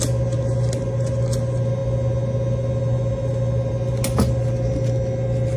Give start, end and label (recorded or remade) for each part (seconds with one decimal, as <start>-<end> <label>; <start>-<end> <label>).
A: 0.0-5.6 recorded